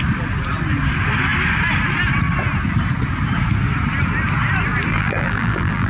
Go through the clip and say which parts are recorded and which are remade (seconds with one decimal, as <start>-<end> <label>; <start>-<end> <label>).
0.0-4.9 recorded; 4.9-5.9 remade